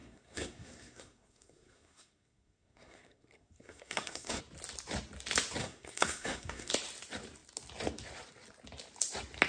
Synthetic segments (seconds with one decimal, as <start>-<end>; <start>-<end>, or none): 0.0-4.4; 5.6-6.7